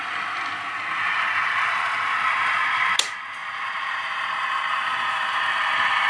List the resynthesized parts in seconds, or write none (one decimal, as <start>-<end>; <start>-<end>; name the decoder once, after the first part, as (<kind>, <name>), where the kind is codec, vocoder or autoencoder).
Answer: 3.4-5.4 (vocoder, BigVGAN v2)